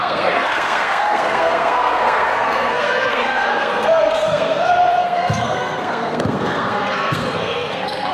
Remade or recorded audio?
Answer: remade